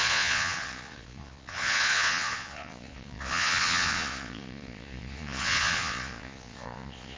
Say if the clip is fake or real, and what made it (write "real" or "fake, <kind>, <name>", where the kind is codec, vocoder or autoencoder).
fake, vocoder, Vocos